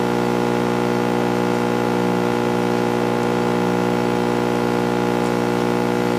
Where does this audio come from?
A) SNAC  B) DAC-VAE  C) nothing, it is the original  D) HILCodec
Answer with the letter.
C